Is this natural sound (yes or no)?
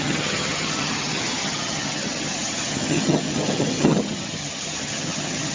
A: no